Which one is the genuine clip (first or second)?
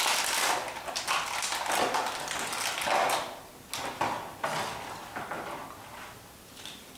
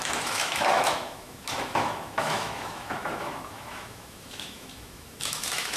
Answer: first